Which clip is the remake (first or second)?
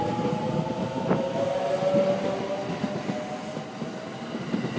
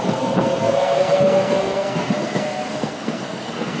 second